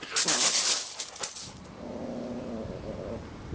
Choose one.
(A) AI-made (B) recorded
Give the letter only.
B